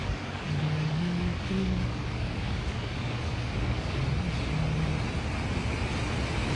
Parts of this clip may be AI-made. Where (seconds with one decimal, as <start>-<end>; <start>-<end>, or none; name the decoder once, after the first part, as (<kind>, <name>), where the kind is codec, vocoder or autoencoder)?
0.0-4.0 (codec, DAC)